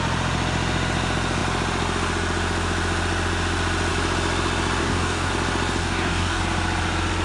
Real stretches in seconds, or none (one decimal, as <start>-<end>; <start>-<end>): 0.0-4.8; 5.3-5.8; 6.4-7.2